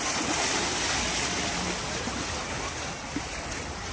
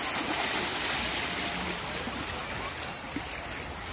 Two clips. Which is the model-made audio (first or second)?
first